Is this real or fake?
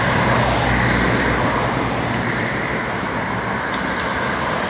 real